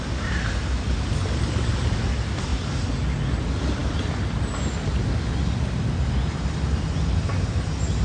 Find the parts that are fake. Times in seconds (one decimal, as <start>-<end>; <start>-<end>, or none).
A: none

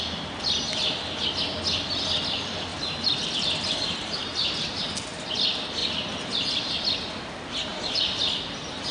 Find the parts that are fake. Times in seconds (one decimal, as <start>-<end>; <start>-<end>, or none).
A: 2.7-4.9; 7.7-8.2

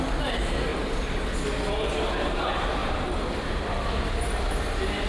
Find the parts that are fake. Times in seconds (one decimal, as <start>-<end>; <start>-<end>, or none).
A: 0.7-1.3; 2.8-4.1

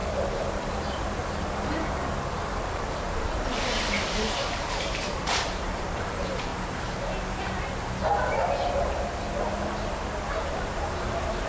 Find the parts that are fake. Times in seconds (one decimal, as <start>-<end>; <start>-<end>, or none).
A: 0.0-1.2; 2.5-6.5; 10.3-11.5

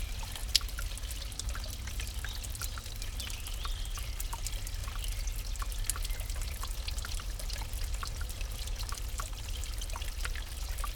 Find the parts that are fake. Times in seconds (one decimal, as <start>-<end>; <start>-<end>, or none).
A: 0.0-0.4; 2.5-4.8; 7.1-9.6; 10.1-11.0